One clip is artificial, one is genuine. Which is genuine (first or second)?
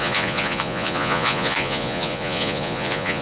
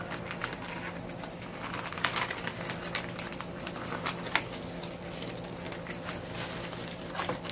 second